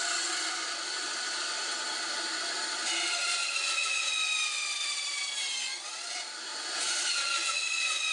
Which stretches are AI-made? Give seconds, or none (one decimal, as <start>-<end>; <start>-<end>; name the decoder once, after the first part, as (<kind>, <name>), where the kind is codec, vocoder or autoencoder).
3.3-4.1 (vocoder, Vocos); 6.5-8.1